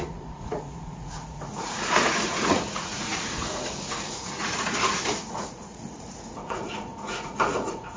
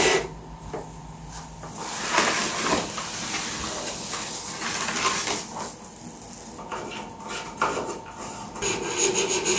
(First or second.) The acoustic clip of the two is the second